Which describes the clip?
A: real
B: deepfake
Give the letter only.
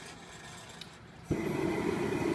A